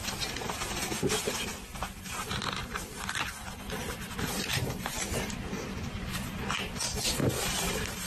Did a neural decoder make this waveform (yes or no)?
yes